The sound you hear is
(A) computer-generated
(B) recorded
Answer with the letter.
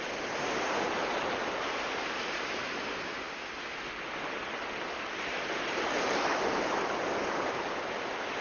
B